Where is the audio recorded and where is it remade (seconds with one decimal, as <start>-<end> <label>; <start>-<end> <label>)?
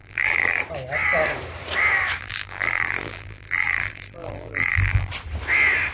0.0-0.6 remade; 0.6-2.2 recorded; 2.2-5.1 remade; 5.1-5.9 recorded